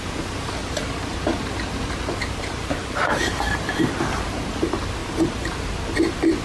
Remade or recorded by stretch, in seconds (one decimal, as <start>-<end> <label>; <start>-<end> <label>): 0.0-0.6 recorded; 0.6-4.4 remade; 4.4-6.4 recorded